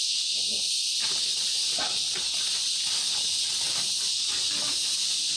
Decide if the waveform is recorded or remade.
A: recorded